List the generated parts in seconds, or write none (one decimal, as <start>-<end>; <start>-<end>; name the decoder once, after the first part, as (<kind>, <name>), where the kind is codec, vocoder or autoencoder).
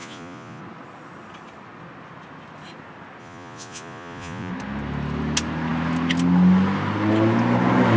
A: 0.0-0.6 (vocoder, Vocos); 3.2-4.5